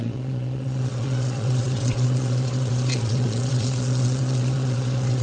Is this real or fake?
fake